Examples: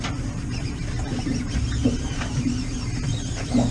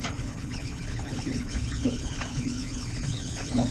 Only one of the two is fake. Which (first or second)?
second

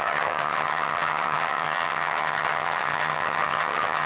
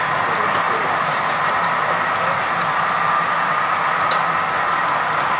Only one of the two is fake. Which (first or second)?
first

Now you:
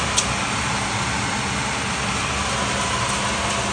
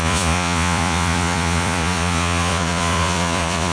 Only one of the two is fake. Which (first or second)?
second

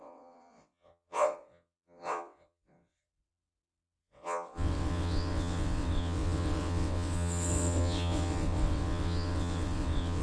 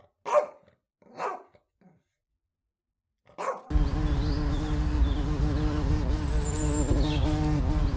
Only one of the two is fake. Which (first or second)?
first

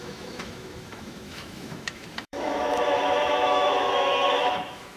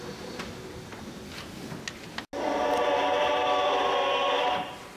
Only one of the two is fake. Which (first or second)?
first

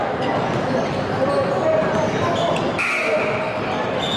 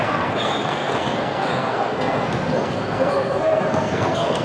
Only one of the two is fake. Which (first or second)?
second